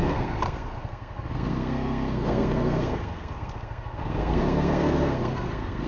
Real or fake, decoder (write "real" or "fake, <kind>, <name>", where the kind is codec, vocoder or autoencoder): fake, codec, SNAC